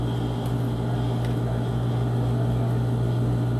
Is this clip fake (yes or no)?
no